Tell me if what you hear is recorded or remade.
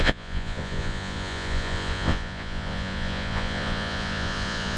remade